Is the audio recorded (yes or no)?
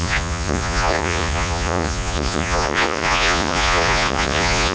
no